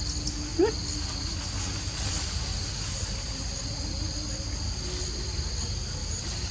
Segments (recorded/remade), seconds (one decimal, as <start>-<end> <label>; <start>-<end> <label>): 0.0-2.7 recorded; 2.7-3.6 remade; 3.6-6.0 recorded; 6.0-6.5 remade